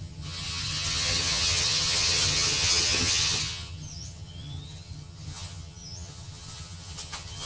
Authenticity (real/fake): fake